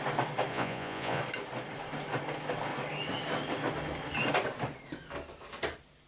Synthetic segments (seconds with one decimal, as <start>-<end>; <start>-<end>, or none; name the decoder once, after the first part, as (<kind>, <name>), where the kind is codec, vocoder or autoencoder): 0.5-1.2 (vocoder, Vocos)